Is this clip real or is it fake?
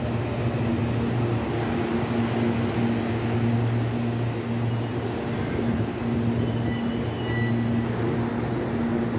real